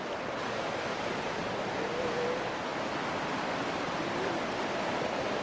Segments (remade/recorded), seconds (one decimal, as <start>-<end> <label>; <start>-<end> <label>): 0.0-5.4 recorded